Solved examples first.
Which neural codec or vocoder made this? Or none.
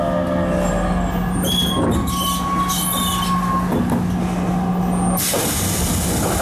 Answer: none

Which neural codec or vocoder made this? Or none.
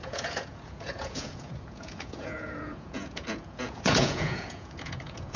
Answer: vocoder, Vocos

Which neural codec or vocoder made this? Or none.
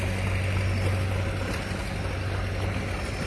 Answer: none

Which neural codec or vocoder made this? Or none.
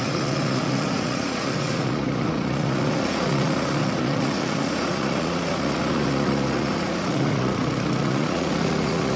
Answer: vocoder, Vocos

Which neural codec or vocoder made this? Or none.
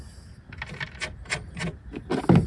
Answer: none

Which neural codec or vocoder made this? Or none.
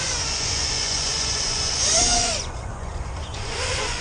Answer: vocoder, Vocos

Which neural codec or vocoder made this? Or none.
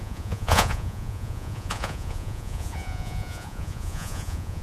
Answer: vocoder, Vocos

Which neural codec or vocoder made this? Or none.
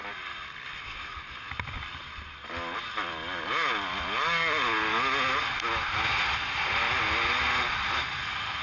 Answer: none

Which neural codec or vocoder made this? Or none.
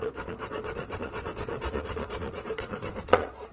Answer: vocoder, Vocos